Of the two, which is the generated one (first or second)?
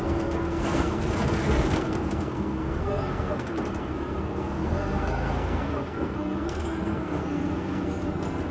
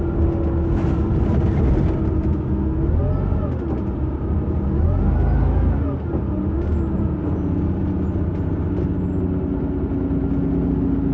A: first